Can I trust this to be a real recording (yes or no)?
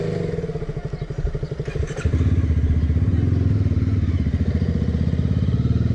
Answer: yes